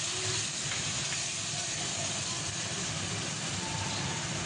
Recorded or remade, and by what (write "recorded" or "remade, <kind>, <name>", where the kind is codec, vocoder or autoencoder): recorded